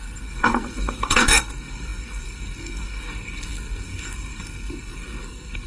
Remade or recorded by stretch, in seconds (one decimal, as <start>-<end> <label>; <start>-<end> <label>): 0.0-5.7 remade